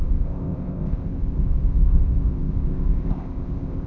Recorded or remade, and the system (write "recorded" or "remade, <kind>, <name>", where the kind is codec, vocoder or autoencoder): remade, codec, ZipCodec